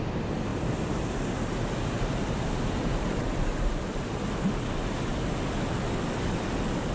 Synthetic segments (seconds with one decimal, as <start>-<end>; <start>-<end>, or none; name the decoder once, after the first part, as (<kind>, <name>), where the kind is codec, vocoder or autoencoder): none